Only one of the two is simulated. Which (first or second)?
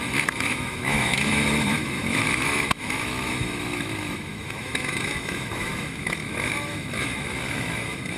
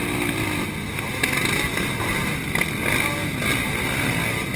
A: first